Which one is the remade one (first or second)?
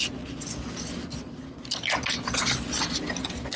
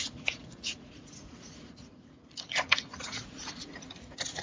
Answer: second